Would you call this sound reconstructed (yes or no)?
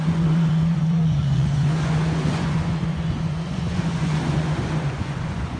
yes